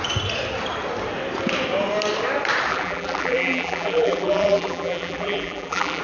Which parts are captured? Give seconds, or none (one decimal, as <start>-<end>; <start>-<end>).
0.0-2.7